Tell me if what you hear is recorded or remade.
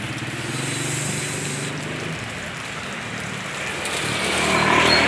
recorded